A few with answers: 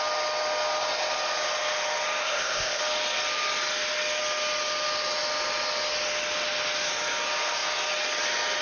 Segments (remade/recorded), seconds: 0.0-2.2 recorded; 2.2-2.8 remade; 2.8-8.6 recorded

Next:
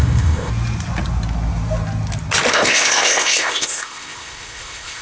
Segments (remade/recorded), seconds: 0.0-0.5 remade; 0.5-2.5 recorded; 2.5-5.0 remade

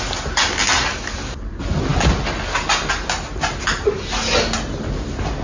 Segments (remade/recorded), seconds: 0.0-5.4 recorded

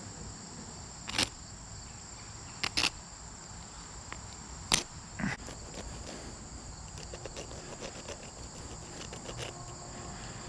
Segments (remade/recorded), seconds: 0.0-10.5 recorded

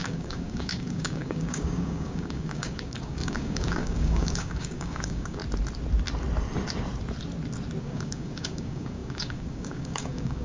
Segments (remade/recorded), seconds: 0.0-5.4 remade; 5.4-7.8 recorded; 7.8-10.4 remade

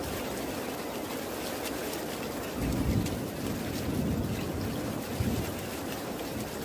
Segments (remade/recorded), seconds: 0.0-6.6 recorded